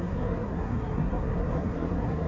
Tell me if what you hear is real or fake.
fake